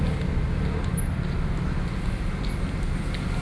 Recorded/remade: recorded